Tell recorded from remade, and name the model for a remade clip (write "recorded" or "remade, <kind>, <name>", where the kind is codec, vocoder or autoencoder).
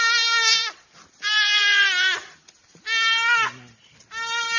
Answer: recorded